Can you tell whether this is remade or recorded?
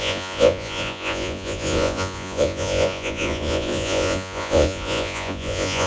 remade